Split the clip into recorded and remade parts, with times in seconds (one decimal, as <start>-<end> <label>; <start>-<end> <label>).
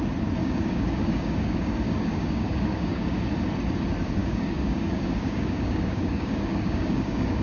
0.0-0.4 recorded; 0.4-3.2 remade; 3.2-4.2 recorded; 4.2-7.4 remade